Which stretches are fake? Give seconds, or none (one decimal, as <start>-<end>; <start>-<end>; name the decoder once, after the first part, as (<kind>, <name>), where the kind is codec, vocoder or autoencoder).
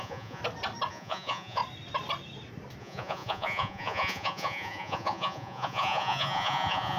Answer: 0.0-0.4 (vocoder, Vocos); 0.9-1.6; 2.8-7.0